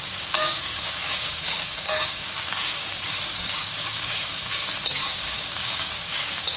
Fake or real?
fake